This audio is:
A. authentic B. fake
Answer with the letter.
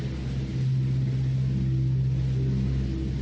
A